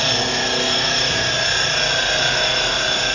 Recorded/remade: recorded